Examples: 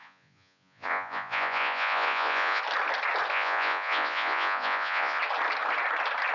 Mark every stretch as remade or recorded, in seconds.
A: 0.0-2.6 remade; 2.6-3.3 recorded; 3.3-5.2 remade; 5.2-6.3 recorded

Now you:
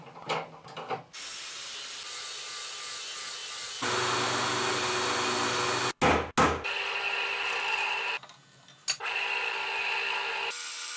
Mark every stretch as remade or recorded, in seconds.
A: 0.0-3.4 recorded; 3.4-4.1 remade; 4.1-11.0 recorded

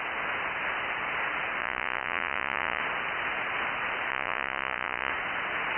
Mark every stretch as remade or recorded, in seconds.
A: 0.0-1.6 recorded; 1.6-2.8 remade; 2.8-4.1 recorded; 4.1-5.1 remade; 5.1-5.8 recorded

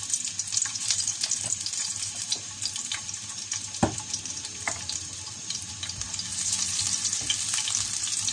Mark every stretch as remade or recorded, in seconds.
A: 0.0-0.7 recorded; 0.7-5.7 remade; 5.7-6.3 recorded; 6.3-7.2 remade; 7.2-8.3 recorded

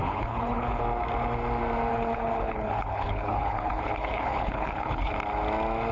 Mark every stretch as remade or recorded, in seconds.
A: 0.0-0.8 remade; 0.8-1.9 recorded; 1.9-5.1 remade; 5.1-5.9 recorded

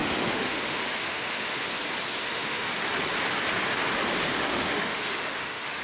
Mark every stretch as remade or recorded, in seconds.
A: 0.0-1.7 remade; 1.7-2.2 recorded; 2.2-2.7 remade; 2.7-4.3 recorded; 4.3-5.8 remade

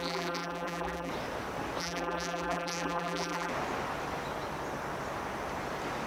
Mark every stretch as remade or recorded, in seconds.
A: 0.0-1.1 remade; 1.1-1.8 recorded; 1.8-3.5 remade; 3.5-6.1 recorded

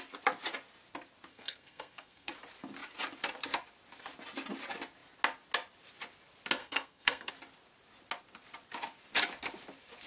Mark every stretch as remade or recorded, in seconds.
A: 0.0-1.3 recorded; 1.3-2.3 remade; 2.3-6.6 recorded; 6.6-7.3 remade; 7.3-10.1 recorded